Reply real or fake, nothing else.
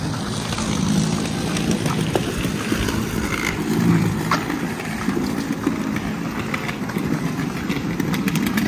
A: real